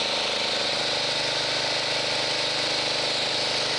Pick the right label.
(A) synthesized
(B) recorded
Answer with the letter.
B